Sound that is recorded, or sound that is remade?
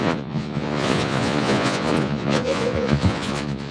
remade